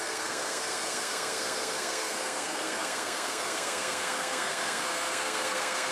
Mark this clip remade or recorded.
remade